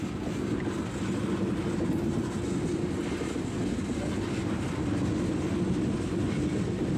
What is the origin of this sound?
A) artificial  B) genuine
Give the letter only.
B